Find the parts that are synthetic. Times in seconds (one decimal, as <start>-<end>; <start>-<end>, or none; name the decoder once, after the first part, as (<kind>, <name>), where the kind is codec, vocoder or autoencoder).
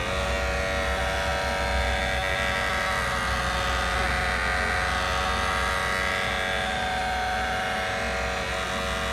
none